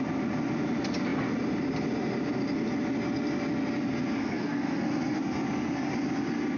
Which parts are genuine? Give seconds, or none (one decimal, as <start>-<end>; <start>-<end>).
0.0-4.2; 5.3-6.6